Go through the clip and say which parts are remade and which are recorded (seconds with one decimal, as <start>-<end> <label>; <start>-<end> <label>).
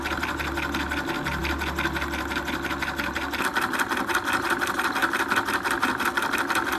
0.0-5.0 recorded; 5.0-6.3 remade; 6.3-6.8 recorded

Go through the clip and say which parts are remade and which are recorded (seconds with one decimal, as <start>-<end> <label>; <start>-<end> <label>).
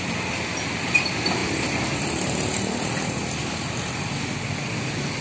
0.0-5.2 recorded